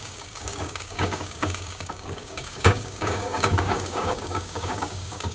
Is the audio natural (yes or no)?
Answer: no